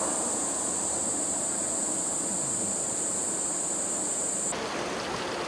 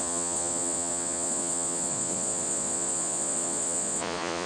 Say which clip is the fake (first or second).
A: second